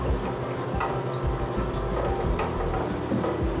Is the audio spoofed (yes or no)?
no